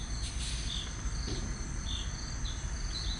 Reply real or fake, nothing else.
real